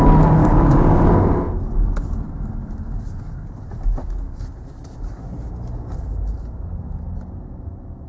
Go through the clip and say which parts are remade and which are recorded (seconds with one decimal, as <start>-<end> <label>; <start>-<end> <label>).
0.0-0.4 recorded; 0.4-1.0 remade; 1.0-8.1 recorded